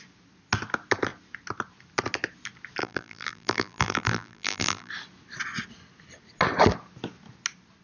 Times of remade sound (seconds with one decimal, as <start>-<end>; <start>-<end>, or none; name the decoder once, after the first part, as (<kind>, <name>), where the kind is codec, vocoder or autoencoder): 2.8-4.9 (vocoder, BigVGAN v2)